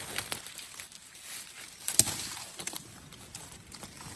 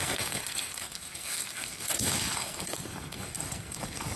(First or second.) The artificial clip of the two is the second